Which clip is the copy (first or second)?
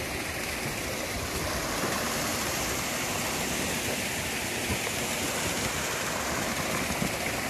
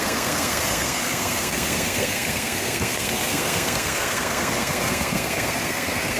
second